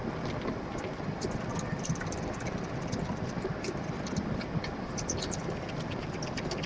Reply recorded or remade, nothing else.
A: recorded